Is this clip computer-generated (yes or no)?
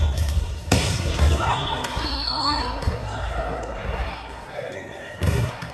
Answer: yes